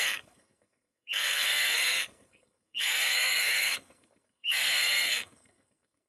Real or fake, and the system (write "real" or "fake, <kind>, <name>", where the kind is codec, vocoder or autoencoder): fake, codec, SNAC